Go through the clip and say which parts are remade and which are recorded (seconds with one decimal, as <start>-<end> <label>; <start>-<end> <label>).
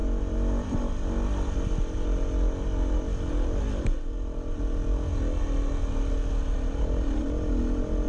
0.0-8.1 recorded